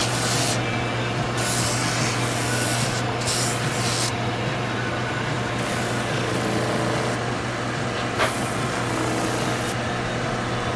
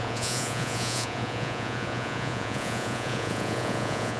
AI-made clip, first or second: second